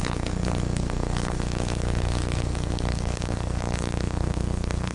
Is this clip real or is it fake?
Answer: fake